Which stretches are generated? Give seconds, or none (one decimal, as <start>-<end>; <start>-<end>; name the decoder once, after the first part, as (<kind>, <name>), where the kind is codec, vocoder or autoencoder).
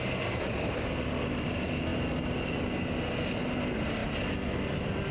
none